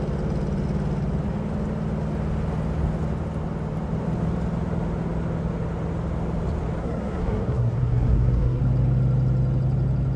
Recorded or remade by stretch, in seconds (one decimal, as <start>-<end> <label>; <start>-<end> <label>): 0.0-6.8 recorded; 6.8-8.6 remade; 8.6-10.2 recorded